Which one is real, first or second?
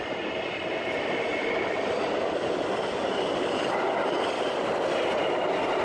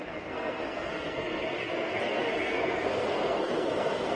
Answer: first